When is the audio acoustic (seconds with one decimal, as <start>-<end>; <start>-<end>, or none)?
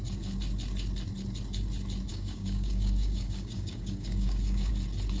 0.0-2.1; 4.7-5.2